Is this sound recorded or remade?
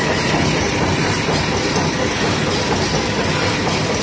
recorded